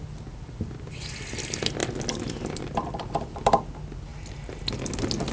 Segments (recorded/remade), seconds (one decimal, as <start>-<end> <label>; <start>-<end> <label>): 0.0-1.8 recorded; 1.8-3.6 remade; 3.6-4.1 recorded; 4.1-4.7 remade; 4.7-5.3 recorded